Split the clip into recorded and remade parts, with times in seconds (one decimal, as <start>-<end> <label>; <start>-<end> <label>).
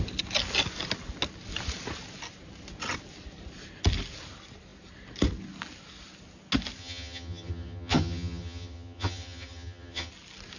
0.0-6.8 recorded; 6.8-10.1 remade; 10.1-10.6 recorded